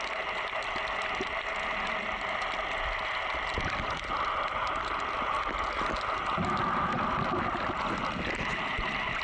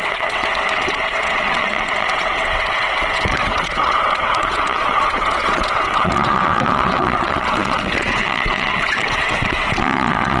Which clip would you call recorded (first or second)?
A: first